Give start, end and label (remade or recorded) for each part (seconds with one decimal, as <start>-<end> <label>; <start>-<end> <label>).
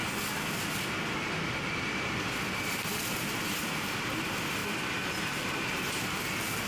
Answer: 0.0-6.7 recorded